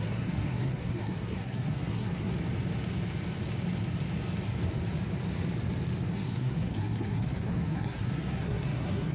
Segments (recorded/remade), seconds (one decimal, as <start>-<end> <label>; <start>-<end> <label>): 0.0-2.3 remade; 2.3-6.1 recorded; 6.1-9.1 remade